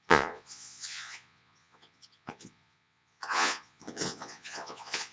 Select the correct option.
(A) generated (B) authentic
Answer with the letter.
A